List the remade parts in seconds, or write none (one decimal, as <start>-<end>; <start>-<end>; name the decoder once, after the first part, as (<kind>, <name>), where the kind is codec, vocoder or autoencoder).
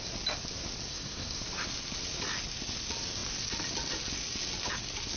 0.9-1.4 (codec, SNAC)